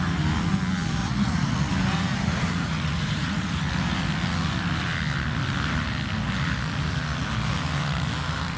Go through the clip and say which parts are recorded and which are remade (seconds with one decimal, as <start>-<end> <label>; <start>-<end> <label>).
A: 0.0-1.0 recorded; 1.0-1.7 remade; 1.7-2.1 recorded; 2.1-3.6 remade; 3.6-8.6 recorded

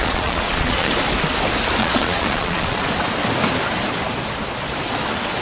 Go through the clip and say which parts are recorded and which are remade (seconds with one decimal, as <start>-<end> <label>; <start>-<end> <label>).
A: 0.0-0.9 remade; 0.9-1.8 recorded; 1.8-2.8 remade; 2.8-5.4 recorded